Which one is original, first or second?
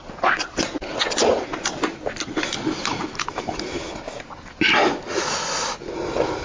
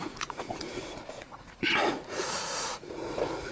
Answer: first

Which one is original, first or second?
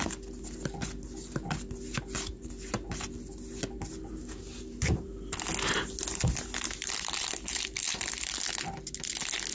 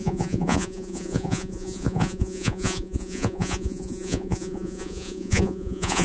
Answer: first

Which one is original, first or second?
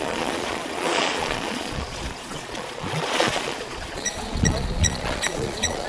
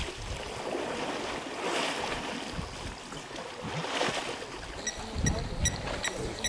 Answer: second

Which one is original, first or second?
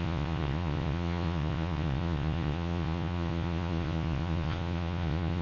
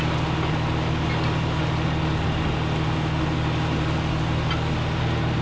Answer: second